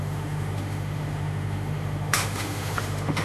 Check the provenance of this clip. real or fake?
fake